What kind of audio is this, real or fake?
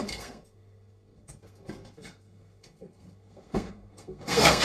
fake